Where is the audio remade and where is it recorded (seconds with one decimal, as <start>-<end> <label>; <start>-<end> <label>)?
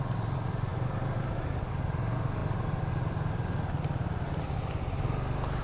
0.0-5.6 recorded